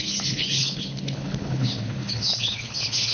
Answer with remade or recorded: remade